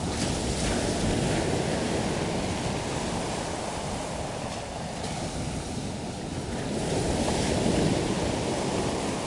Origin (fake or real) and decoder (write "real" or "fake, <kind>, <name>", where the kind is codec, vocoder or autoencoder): real